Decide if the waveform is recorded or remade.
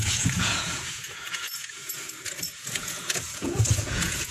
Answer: remade